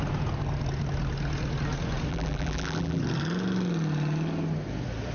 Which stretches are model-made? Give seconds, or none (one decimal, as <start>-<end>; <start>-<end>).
2.1-3.0